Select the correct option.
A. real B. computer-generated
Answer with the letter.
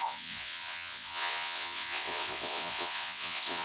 B